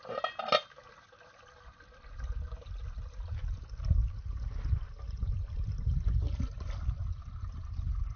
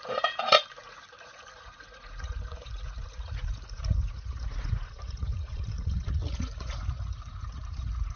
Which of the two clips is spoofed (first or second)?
second